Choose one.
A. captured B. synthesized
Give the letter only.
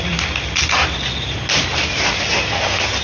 A